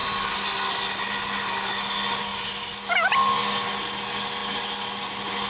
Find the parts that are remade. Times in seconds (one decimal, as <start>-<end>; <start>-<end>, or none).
none